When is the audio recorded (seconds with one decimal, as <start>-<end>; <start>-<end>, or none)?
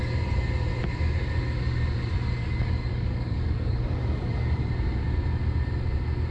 0.0-2.4; 4.7-6.3